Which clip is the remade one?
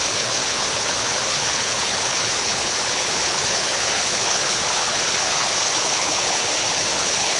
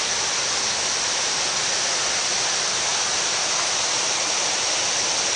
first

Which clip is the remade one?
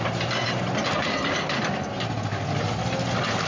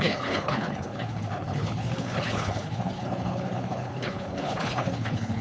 second